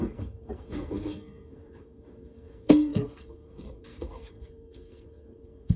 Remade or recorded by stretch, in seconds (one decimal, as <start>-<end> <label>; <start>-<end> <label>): 0.0-5.8 remade